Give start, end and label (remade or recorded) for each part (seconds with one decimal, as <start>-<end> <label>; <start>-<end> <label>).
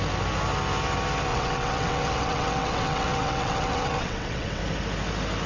0.0-1.3 recorded; 1.3-4.6 remade; 4.6-5.5 recorded